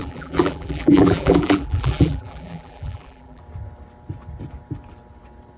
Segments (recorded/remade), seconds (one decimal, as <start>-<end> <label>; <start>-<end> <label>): 0.0-3.4 remade; 3.4-5.6 recorded